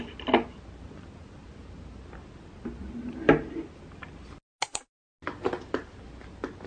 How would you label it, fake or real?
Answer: real